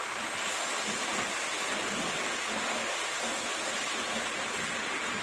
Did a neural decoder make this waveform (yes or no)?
no